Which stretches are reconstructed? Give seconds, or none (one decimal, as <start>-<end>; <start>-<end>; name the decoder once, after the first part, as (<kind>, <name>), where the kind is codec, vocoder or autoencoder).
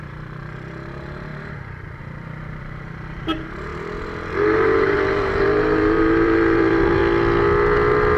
0.0-7.0 (vocoder, BigVGAN v2)